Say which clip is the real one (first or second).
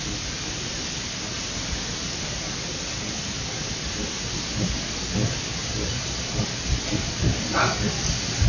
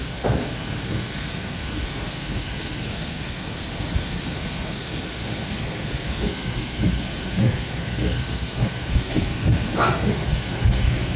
first